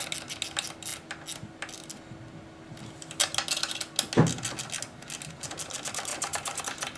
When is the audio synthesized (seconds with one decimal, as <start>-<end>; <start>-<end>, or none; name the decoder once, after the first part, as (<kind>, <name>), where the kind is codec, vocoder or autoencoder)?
6.1-6.6 (vocoder, BigVGAN v2)